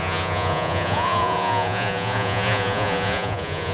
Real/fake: fake